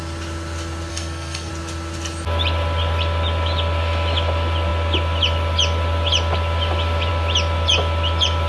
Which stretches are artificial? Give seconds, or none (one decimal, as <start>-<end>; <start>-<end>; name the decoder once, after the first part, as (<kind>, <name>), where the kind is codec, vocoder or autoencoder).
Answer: 0.9-1.5 (codec, SNAC)